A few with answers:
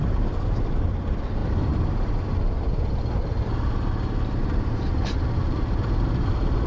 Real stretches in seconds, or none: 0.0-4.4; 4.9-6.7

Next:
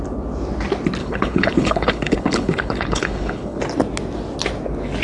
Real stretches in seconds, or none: 0.0-1.0; 3.6-5.0

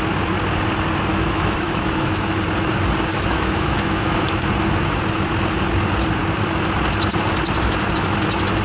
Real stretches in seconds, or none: 0.0-1.1; 2.4-3.1; 4.4-8.6

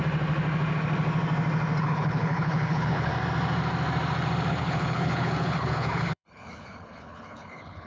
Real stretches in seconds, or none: 0.0-1.8; 3.1-4.5

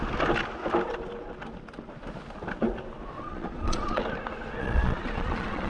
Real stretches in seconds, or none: 0.0-3.2; 4.0-4.6

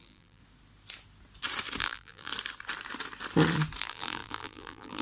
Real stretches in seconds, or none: 0.4-1.8; 2.3-3.8

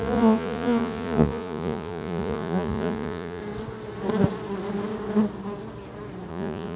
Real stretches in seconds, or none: 3.4-6.3